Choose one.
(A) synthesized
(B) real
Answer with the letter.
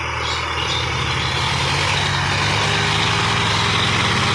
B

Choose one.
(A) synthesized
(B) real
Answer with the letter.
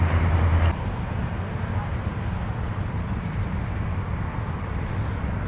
B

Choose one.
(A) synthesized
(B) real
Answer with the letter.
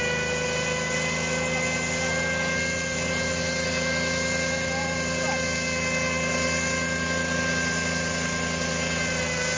B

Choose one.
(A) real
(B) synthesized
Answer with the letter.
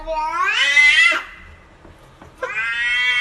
A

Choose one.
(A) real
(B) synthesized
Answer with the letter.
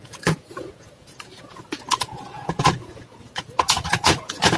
B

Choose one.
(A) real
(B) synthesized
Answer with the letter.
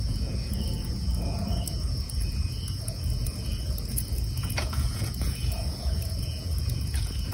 B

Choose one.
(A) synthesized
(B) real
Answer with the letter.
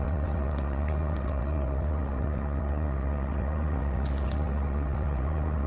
A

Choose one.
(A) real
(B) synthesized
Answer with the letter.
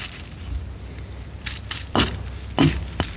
A